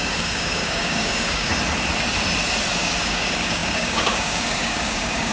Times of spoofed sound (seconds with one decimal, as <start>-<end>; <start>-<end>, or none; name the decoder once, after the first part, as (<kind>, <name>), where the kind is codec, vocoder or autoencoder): 0.0-1.5 (codec, DAC); 2.7-5.3